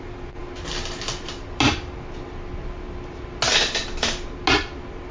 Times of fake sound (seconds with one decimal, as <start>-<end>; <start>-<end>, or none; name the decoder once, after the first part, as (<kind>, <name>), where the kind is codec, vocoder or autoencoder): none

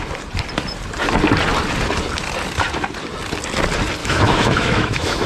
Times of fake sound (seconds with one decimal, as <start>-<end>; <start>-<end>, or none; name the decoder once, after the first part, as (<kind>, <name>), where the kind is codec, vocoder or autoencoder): 4.0-5.3 (autoencoder, DAC-VAE)

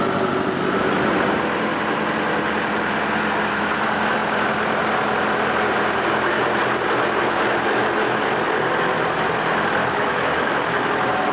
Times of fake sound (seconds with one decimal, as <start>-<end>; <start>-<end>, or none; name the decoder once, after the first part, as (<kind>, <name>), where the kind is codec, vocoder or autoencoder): 9.8-10.9 (autoencoder, DAC-VAE)

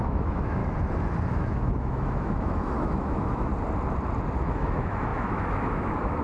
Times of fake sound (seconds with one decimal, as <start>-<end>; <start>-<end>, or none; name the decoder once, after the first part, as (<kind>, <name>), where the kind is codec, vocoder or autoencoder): 0.0-0.6 (autoencoder, DAC-VAE); 1.3-3.5; 4.4-6.2

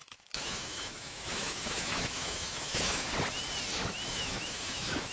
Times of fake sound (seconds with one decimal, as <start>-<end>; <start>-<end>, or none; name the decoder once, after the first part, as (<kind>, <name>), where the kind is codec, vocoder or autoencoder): 0.0-3.1 (autoencoder, DAC-VAE); 4.1-5.1